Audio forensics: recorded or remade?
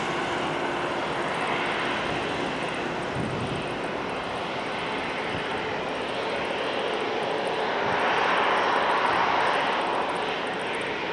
recorded